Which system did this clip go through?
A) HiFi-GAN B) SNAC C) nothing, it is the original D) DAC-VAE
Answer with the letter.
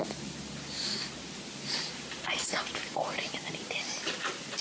C